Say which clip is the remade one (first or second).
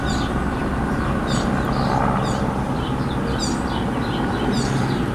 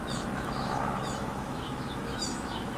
second